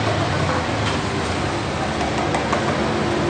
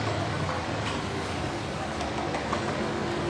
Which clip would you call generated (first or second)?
second